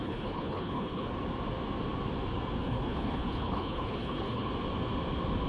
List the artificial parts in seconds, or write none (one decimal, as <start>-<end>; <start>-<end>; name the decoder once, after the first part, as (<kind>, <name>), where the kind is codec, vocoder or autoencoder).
0.0-1.1 (codec, HILCodec); 2.6-4.5